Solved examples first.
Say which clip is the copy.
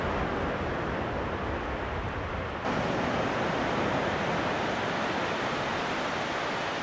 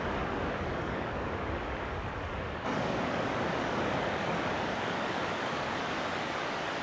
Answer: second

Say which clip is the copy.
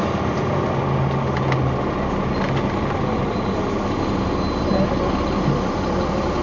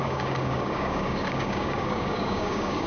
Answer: second